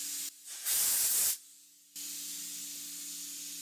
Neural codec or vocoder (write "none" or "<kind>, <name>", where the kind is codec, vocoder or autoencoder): none